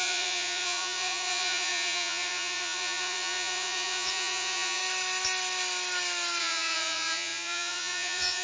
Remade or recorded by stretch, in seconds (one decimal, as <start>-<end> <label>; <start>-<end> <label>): 0.0-4.8 remade; 4.8-6.4 recorded; 6.4-8.4 remade